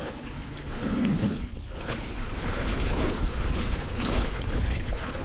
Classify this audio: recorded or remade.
remade